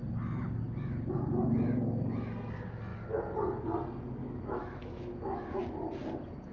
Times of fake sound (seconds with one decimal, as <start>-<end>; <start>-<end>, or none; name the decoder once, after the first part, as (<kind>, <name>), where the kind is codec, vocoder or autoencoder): 4.2-5.6 (autoencoder, DAC-VAE)